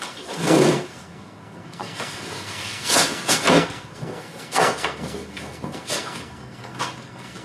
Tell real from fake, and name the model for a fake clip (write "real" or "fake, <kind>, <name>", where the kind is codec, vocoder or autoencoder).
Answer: fake, codec, SNAC